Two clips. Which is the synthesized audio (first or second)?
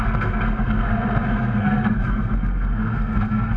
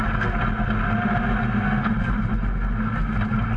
first